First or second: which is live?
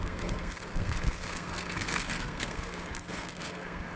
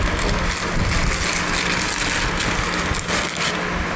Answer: second